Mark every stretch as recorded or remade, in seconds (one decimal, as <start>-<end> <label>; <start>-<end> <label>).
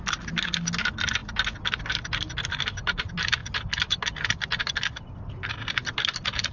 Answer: 0.0-5.9 recorded; 5.9-6.5 remade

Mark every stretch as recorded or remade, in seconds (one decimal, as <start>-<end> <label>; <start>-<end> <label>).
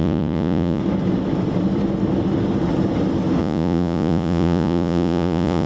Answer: 0.0-0.8 remade; 0.8-3.4 recorded; 3.4-5.7 remade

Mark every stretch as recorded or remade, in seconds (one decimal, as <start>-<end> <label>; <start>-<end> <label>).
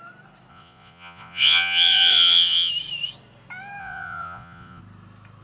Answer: 0.0-0.5 recorded; 0.5-2.7 remade; 2.7-3.8 recorded; 3.8-4.8 remade; 4.8-5.4 recorded